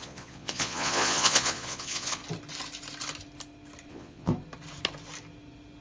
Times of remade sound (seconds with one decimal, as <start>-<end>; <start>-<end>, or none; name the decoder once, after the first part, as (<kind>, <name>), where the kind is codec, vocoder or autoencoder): 0.0-2.2 (vocoder, Vocos); 3.9-4.3